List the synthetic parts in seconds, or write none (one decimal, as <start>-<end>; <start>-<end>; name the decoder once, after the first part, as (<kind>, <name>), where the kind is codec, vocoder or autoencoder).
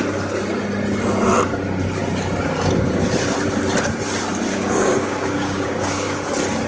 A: 4.5-6.3 (codec, DAC)